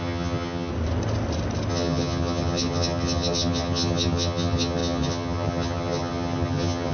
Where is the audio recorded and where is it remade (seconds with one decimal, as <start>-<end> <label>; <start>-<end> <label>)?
0.0-0.7 remade; 0.7-1.7 recorded; 1.7-6.9 remade